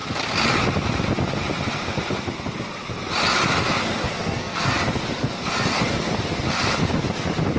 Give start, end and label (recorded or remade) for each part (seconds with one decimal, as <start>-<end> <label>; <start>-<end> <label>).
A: 0.0-4.0 recorded; 4.0-4.7 remade; 4.7-7.6 recorded